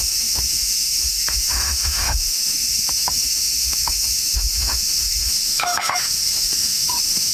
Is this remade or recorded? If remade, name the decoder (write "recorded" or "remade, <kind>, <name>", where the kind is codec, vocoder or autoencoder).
remade, autoencoder, DAC-VAE